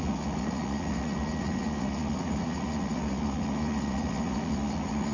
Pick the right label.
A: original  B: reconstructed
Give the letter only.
B